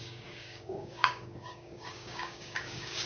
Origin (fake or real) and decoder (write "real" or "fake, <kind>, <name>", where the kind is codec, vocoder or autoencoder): fake, codec, DAC